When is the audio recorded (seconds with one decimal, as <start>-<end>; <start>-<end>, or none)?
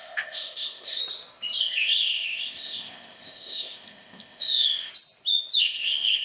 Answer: 1.0-1.6; 4.9-5.6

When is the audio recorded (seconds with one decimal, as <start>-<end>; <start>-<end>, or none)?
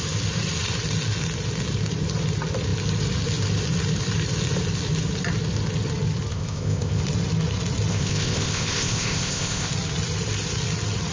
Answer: 0.0-6.3; 7.0-7.9; 9.7-11.1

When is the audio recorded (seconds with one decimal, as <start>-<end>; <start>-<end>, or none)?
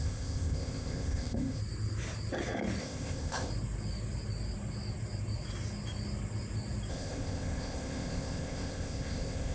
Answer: 1.6-2.8; 3.5-6.9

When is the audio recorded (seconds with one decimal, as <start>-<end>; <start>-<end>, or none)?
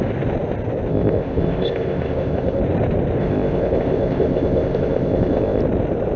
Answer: 0.0-0.9; 2.6-3.2; 5.6-6.2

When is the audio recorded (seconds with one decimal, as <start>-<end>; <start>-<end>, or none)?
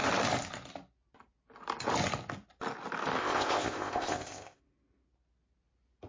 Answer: 0.0-3.2; 4.6-6.1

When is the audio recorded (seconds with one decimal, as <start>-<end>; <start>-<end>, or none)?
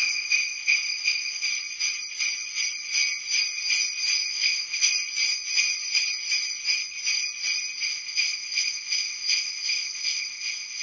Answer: 1.5-4.3; 4.9-7.9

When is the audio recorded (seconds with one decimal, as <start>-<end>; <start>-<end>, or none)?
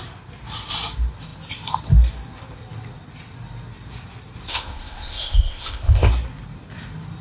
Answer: 0.0-4.5; 6.1-7.2